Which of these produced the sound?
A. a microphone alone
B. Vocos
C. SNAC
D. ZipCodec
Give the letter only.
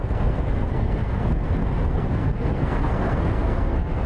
C